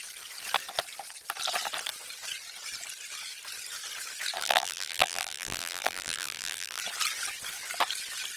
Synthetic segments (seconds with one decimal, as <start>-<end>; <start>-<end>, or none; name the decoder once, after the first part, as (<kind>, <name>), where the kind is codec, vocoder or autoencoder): 4.4-6.8 (vocoder, BigVGAN v2)